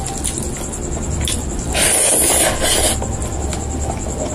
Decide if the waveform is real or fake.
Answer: real